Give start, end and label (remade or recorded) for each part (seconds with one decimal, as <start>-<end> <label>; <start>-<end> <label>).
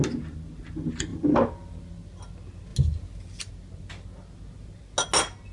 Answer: 0.0-5.5 recorded